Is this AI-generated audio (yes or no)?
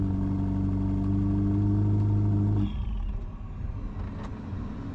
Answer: no